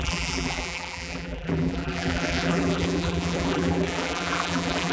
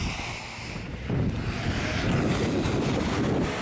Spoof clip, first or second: first